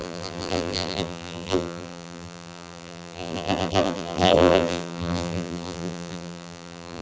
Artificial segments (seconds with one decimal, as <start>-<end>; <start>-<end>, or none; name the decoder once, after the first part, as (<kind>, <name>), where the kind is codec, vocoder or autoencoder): 0.0-7.0 (vocoder, BigVGAN v2)